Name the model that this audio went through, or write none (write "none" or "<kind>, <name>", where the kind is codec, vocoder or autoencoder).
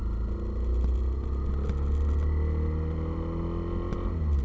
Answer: none